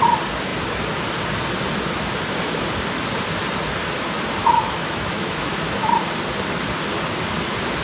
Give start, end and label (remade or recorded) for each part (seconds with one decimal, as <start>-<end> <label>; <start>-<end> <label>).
0.0-4.4 recorded; 4.4-5.9 remade; 5.9-7.8 recorded